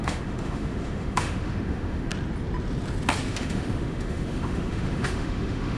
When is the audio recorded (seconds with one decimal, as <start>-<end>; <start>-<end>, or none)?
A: 2.1-3.2